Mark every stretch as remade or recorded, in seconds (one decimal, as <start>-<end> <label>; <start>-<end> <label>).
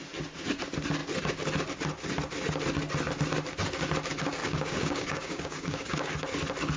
0.0-4.4 recorded; 4.4-6.1 remade; 6.1-6.8 recorded